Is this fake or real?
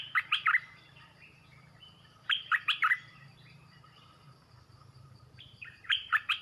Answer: fake